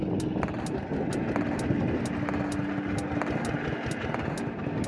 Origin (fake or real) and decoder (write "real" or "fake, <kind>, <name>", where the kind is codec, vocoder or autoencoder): real